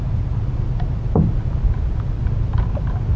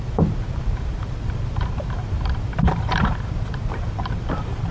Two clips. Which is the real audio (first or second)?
first